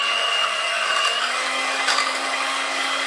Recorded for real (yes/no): no